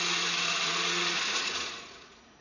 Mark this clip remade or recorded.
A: remade